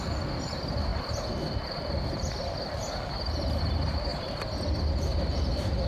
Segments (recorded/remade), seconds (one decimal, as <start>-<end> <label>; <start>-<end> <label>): 0.0-5.9 recorded